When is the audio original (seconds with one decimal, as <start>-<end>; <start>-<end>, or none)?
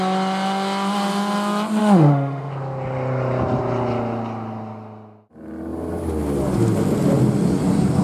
0.0-1.8; 2.5-8.0